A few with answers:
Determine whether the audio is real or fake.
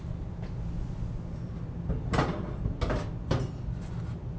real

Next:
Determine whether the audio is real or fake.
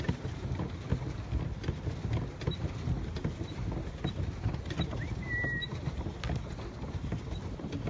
real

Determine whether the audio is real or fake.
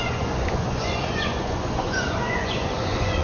fake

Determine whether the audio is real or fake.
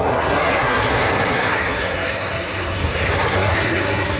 fake